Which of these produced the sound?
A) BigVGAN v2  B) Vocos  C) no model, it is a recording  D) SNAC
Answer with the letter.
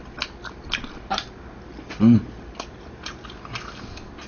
C